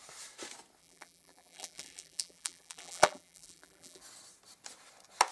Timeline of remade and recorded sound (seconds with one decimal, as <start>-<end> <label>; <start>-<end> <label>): 0.0-0.8 recorded; 0.8-4.0 remade; 4.0-5.3 recorded